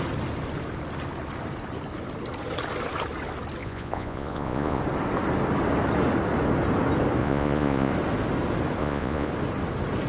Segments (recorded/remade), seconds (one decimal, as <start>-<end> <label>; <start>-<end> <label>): 0.0-3.6 recorded; 3.6-4.8 remade; 4.8-7.2 recorded; 7.2-7.9 remade; 7.9-8.8 recorded; 8.8-9.3 remade; 9.3-10.1 recorded